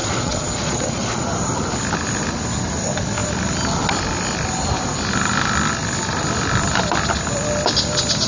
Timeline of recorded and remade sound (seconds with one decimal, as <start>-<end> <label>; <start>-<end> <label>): 0.0-1.2 remade; 1.2-8.3 recorded